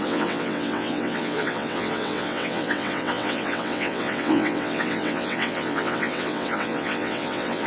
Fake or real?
fake